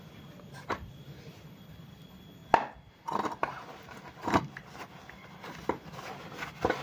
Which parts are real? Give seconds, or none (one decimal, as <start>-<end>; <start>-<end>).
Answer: 0.0-6.8